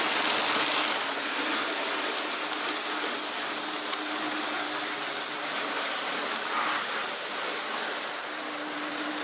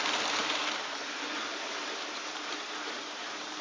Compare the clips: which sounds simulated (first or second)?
second